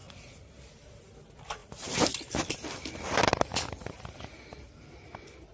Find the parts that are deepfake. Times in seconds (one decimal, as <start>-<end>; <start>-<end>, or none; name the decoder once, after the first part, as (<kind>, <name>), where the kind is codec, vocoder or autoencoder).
none